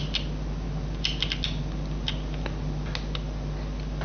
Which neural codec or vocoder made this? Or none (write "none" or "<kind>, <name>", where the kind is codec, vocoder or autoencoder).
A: none